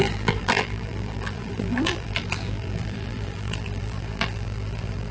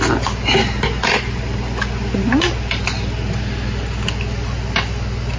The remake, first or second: first